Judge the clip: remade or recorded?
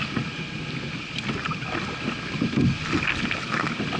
recorded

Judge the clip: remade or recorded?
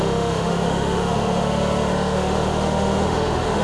remade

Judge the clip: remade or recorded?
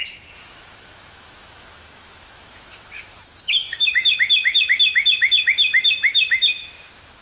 remade